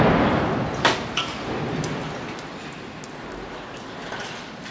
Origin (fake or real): real